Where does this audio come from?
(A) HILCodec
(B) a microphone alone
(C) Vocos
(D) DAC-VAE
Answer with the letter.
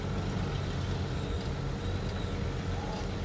B